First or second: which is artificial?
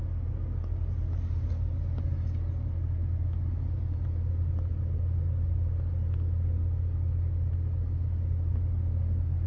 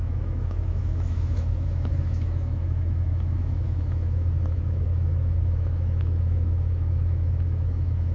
second